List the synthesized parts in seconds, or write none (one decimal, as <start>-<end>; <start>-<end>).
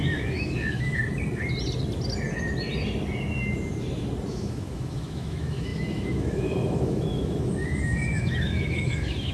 0.0-1.0; 4.3-9.3